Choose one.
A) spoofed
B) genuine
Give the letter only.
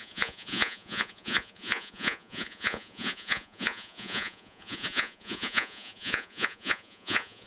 A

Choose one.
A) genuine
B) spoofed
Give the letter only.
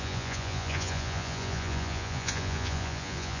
B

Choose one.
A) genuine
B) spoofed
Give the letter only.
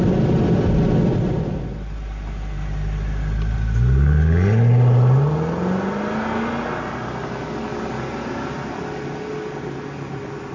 A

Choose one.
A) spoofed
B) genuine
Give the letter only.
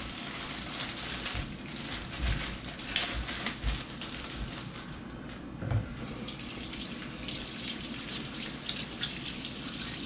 B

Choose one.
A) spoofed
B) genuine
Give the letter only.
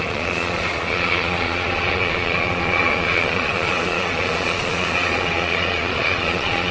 A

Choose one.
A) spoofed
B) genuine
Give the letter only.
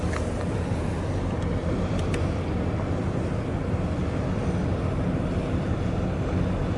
B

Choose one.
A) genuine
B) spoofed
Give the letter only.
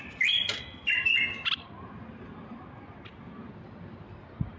A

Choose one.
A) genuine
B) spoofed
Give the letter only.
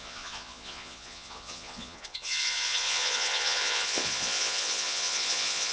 B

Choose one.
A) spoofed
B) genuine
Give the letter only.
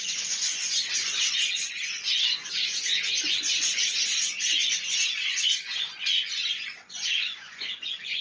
A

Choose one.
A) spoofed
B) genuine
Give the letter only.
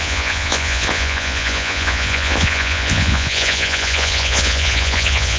A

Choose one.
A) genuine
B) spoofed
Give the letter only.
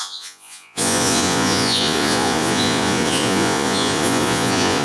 B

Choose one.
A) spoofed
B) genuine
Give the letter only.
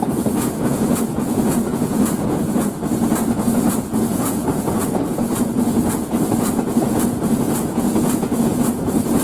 A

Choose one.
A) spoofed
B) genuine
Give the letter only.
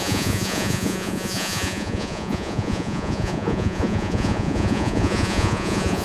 A